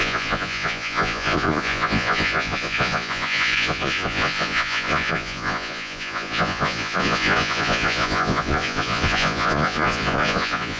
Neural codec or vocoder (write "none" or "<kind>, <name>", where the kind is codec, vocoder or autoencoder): vocoder, Vocos